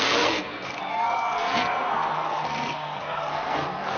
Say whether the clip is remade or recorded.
remade